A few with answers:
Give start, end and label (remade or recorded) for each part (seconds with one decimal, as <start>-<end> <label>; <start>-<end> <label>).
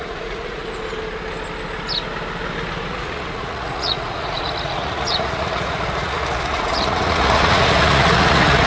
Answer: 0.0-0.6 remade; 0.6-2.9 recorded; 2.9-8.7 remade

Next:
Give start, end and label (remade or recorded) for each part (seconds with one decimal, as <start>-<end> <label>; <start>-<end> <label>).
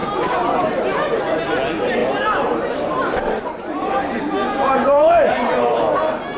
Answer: 0.0-2.0 recorded; 2.0-5.8 remade; 5.8-6.4 recorded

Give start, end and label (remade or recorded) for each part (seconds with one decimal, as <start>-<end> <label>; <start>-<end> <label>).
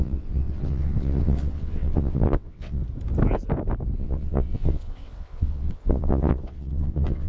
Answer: 0.0-2.8 remade; 2.8-4.0 recorded; 4.0-7.3 remade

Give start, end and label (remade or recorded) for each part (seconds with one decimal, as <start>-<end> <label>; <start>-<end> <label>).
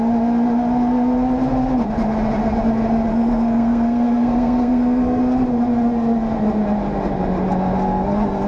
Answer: 0.0-3.1 recorded; 3.1-5.2 remade; 5.2-8.5 recorded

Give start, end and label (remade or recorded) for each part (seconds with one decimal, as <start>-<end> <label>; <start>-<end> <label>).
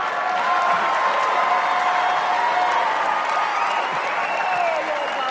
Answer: 0.0-5.3 recorded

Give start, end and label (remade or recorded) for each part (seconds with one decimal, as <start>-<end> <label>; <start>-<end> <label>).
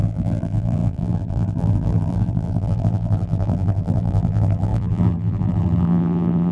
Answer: 0.0-6.5 remade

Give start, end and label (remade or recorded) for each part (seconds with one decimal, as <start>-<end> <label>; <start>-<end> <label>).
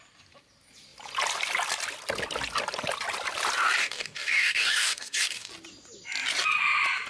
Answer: 0.0-3.8 recorded; 3.8-5.5 remade; 5.5-7.1 recorded